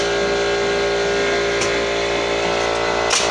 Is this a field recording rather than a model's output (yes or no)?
yes